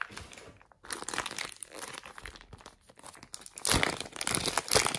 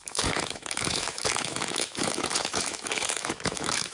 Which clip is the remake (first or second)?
second